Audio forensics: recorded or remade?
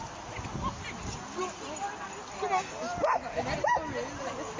recorded